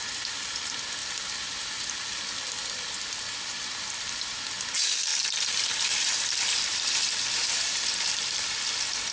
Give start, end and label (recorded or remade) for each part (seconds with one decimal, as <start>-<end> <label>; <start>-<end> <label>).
0.0-1.0 recorded; 1.0-4.4 remade; 4.4-5.1 recorded; 5.1-8.5 remade; 8.5-9.1 recorded